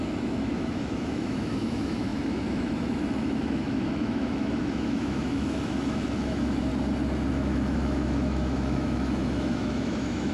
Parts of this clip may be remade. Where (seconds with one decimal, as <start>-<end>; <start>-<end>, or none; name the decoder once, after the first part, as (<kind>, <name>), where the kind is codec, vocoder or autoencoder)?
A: 0.0-6.7 (autoencoder, DAC-VAE); 7.3-10.3